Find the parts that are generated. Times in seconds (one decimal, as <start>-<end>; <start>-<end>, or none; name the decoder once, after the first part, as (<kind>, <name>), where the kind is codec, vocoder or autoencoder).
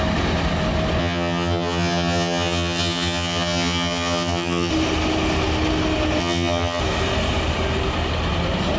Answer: 1.0-4.7 (vocoder, HiFi-GAN); 6.2-6.8